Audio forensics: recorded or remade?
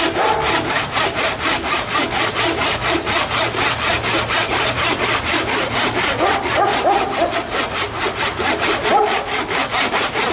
recorded